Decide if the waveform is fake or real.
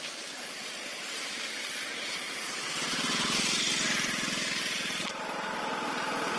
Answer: real